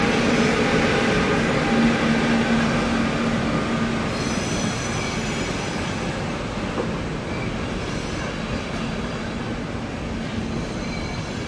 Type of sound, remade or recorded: recorded